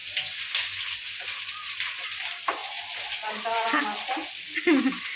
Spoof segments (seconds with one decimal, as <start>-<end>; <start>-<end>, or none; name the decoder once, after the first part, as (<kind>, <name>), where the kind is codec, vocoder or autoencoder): none